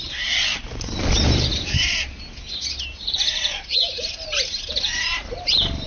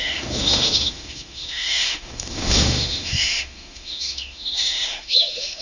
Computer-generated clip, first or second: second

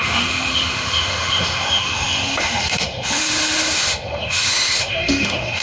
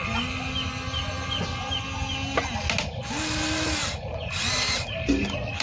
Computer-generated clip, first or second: first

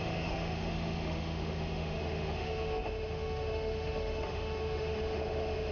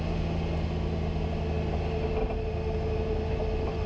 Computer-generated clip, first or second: first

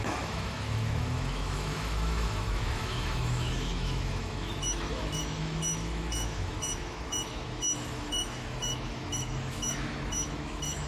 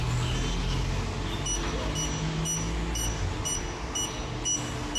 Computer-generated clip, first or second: first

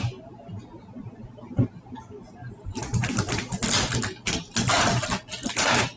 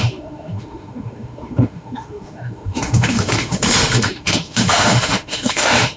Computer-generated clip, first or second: second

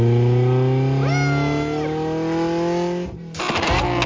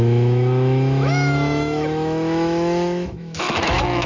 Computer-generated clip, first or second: second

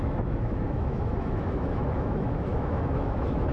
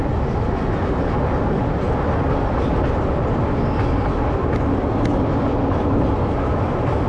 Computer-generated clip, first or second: first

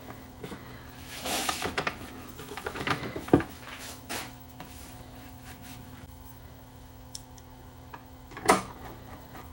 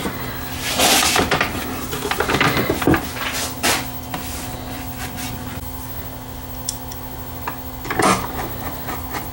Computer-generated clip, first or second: first